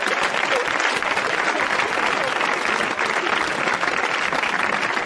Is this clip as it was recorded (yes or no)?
yes